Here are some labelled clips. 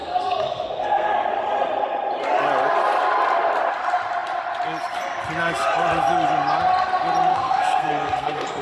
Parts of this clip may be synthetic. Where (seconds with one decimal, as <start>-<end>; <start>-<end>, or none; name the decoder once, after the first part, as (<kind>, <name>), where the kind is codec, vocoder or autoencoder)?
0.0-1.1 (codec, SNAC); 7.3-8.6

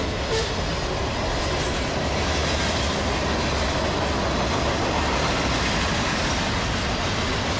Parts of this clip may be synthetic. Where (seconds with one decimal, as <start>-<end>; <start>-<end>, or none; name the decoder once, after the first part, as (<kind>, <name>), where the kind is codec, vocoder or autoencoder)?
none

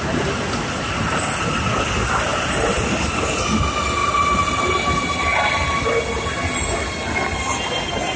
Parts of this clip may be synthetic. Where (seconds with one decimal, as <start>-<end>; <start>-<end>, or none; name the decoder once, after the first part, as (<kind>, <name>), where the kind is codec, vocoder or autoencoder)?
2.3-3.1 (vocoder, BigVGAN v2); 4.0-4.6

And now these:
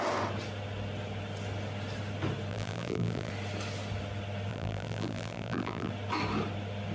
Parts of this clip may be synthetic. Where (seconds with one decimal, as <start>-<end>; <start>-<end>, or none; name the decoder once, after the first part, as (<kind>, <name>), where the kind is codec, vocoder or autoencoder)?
2.5-3.3 (vocoder, BigVGAN v2); 4.5-5.9

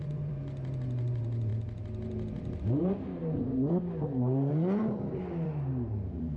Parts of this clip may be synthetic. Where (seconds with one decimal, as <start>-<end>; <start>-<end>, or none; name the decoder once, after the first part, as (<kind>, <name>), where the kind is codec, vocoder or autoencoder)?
0.0-1.5 (vocoder, BigVGAN v2); 2.6-3.2; 4.0-6.4